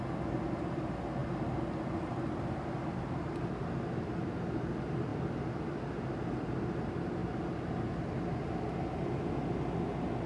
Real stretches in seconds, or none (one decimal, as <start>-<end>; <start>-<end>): 0.0-1.2; 3.6-10.3

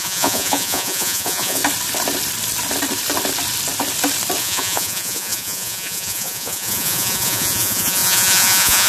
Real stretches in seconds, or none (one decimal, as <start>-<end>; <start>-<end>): 1.6-4.4